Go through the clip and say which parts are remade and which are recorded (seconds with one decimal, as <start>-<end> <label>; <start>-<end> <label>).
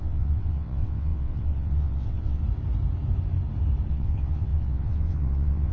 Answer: 0.0-2.4 remade; 2.4-3.9 recorded; 3.9-5.7 remade